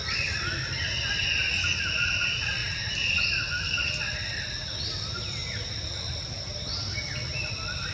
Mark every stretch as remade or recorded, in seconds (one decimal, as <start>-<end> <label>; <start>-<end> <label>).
0.0-2.6 recorded; 2.6-3.2 remade; 3.2-7.9 recorded